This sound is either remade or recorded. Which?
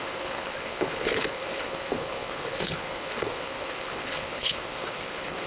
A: remade